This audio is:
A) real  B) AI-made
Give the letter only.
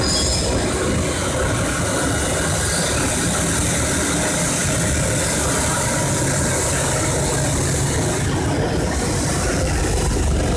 A